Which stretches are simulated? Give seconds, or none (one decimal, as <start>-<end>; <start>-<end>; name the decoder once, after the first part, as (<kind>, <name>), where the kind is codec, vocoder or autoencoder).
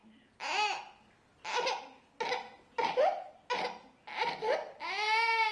none